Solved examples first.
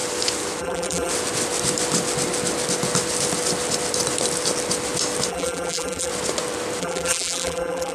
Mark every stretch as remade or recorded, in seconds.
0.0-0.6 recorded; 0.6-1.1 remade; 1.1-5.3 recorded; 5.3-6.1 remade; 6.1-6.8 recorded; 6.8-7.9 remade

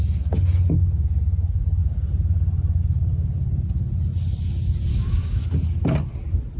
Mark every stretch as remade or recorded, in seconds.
0.0-4.9 recorded; 4.9-5.4 remade; 5.4-6.6 recorded

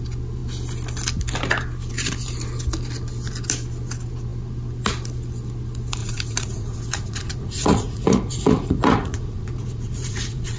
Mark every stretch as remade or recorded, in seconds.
0.0-6.0 recorded; 6.0-10.6 remade